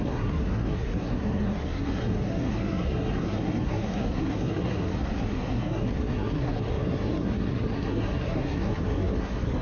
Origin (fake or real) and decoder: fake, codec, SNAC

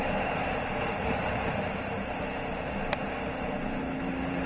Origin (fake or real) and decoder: real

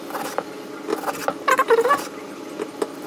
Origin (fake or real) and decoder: real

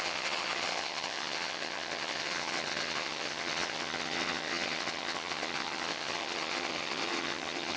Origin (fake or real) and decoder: fake, vocoder, HiFi-GAN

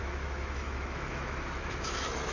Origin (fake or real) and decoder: fake, autoencoder, DAC-VAE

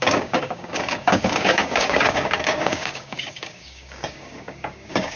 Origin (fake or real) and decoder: fake, codec, DAC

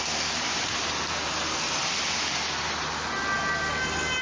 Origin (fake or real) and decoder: real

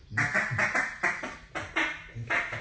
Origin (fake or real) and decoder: real